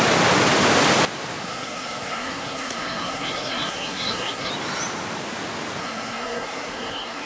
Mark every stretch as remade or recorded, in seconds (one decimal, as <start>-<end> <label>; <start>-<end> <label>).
0.0-1.4 recorded; 1.4-4.5 remade; 4.5-5.8 recorded; 5.8-7.3 remade